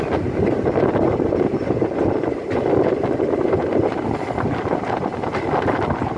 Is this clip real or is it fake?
real